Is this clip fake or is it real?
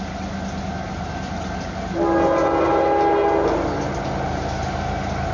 real